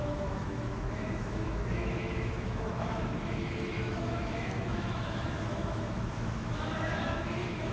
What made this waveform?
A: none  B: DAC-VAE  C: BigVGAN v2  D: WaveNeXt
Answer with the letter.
B